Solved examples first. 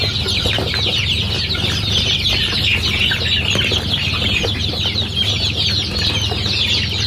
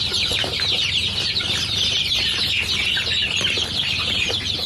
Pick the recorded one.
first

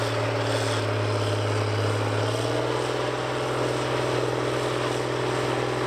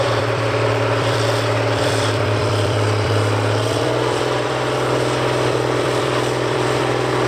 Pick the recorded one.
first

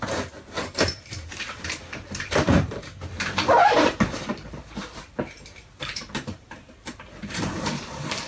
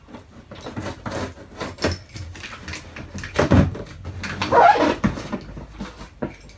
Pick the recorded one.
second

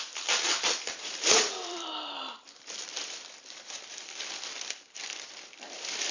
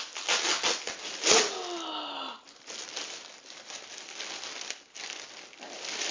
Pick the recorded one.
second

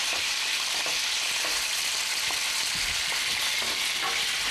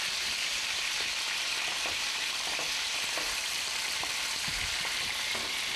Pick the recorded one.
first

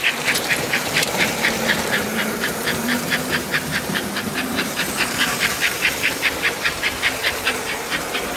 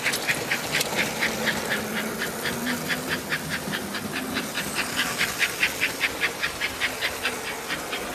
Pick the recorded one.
second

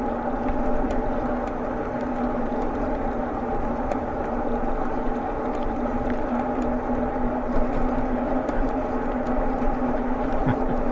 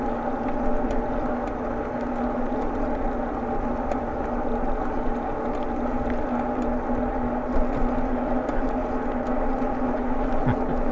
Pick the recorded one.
second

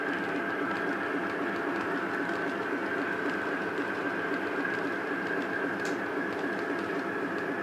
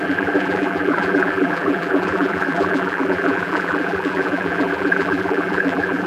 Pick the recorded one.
first